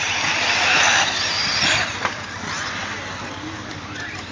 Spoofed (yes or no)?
no